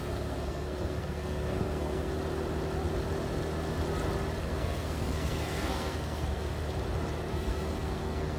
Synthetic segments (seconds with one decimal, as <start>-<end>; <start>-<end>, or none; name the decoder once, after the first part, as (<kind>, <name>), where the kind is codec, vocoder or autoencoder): 0.0-2.1 (codec, SNAC); 4.4-6.5; 7.3-8.4